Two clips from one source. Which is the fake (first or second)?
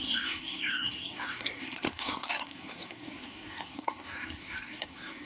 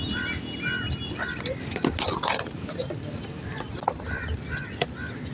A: first